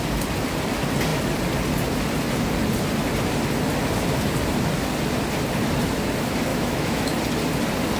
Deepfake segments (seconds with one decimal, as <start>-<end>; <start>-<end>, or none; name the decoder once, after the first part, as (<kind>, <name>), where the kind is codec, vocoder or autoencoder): 6.5-7.2 (autoencoder, DAC-VAE)